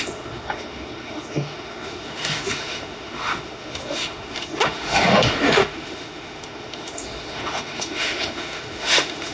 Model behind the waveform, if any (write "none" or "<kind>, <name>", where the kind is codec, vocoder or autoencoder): autoencoder, DAC-VAE